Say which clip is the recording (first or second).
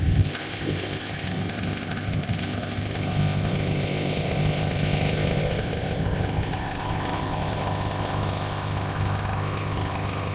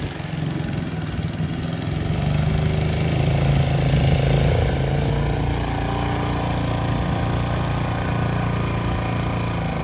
second